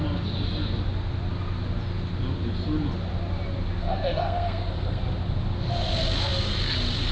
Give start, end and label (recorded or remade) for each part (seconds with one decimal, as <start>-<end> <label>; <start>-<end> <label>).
0.0-3.8 recorded; 3.8-5.0 remade; 5.0-7.1 recorded